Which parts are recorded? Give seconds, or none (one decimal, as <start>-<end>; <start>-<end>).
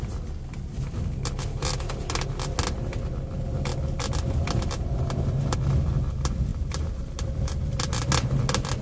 0.0-8.8